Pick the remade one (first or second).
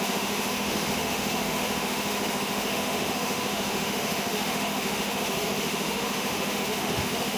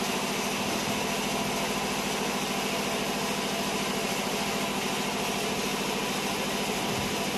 first